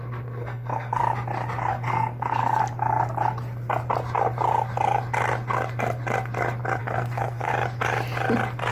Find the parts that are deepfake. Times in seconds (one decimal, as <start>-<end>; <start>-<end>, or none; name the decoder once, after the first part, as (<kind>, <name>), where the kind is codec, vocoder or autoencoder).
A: 0.0-1.0 (codec, SNAC); 1.7-2.6; 6.8-7.5